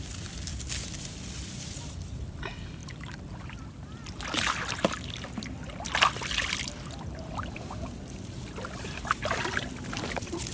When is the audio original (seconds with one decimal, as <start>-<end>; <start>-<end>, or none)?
0.5-1.1